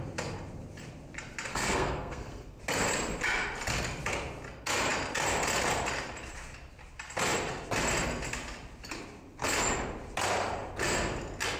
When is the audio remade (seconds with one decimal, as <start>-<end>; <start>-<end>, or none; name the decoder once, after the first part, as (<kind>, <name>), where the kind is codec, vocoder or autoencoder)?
1.5-2.6 (codec, SNAC)